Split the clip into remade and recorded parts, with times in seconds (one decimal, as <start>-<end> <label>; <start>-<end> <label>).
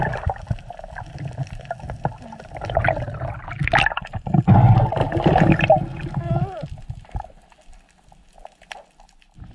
0.0-9.5 recorded